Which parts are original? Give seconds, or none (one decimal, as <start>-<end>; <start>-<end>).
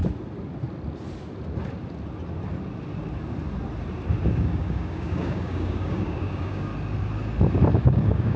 0.0-4.3; 6.7-7.8